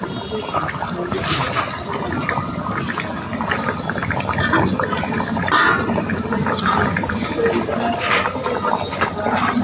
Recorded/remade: recorded